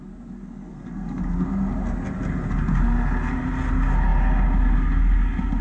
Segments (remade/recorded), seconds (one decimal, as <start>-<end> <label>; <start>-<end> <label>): 0.0-0.7 recorded; 0.7-1.2 remade; 1.2-5.6 recorded